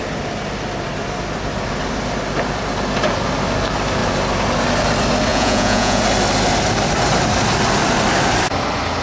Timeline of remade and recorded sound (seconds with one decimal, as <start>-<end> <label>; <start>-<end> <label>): 0.0-5.3 recorded; 5.3-6.0 remade; 6.0-9.0 recorded

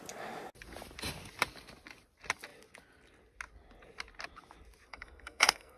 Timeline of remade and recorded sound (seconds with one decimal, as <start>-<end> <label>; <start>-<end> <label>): 0.0-4.9 recorded; 4.9-5.8 remade